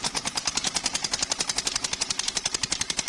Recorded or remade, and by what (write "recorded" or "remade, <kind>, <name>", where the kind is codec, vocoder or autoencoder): recorded